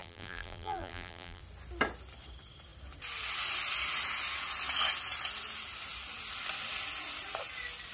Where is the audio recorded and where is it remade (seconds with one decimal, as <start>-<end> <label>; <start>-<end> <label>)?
0.0-1.4 remade; 1.4-7.9 recorded